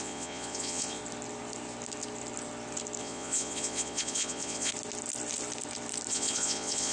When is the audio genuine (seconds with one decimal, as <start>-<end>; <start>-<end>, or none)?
1.0-3.0; 4.7-6.1